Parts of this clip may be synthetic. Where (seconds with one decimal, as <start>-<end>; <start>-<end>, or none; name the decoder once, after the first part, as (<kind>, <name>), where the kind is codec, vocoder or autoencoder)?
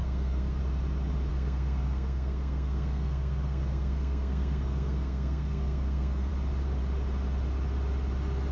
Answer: 0.0-0.6 (codec, SNAC); 1.3-6.3